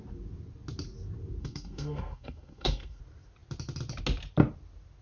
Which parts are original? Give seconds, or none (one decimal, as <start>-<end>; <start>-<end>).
0.0-1.4; 3.0-5.0